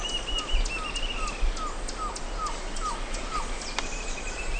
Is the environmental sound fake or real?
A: real